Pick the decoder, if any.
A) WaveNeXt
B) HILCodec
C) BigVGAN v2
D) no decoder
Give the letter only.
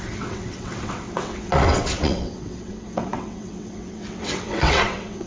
A